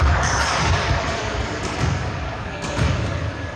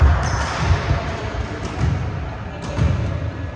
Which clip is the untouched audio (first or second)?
second